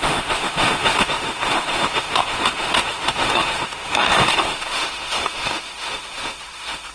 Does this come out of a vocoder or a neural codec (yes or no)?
yes